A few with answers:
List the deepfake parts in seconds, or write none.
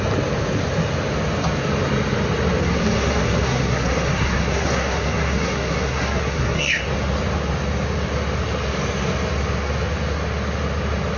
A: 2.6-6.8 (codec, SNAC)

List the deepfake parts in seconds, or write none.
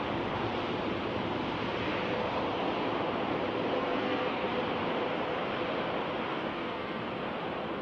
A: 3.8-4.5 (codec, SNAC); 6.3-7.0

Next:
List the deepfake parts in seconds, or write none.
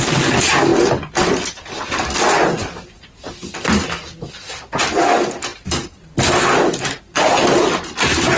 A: none